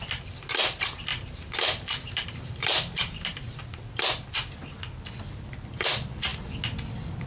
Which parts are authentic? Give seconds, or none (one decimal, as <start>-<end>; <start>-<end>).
0.0-1.1; 3.8-7.3